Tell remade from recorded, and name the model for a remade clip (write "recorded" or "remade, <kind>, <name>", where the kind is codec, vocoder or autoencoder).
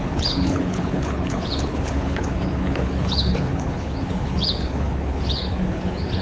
remade, codec, HILCodec